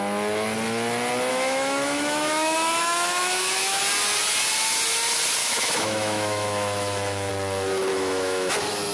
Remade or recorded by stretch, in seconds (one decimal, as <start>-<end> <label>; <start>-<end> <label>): 0.0-1.3 recorded; 1.3-3.8 remade; 3.8-5.4 recorded; 5.4-7.3 remade; 7.3-7.9 recorded; 7.9-8.5 remade; 8.5-8.9 recorded